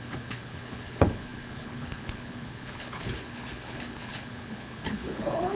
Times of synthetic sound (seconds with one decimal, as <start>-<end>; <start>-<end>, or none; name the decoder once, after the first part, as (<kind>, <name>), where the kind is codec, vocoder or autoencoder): 0.0-5.5 (codec, HILCodec)